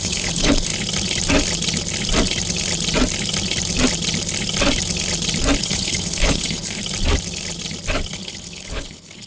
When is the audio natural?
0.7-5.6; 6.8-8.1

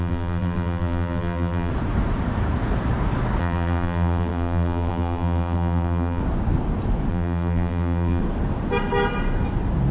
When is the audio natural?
1.7-3.4; 6.2-7.1; 8.2-9.9

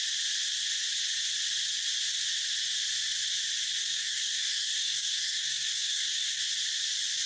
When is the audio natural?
0.0-3.8; 6.4-7.3

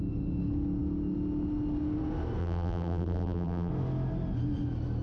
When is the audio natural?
0.0-2.4; 3.7-5.0

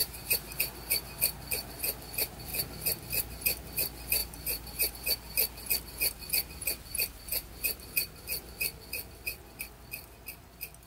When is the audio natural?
0.6-4.2; 4.9-10.9